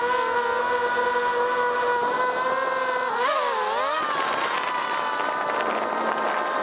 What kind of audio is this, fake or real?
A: real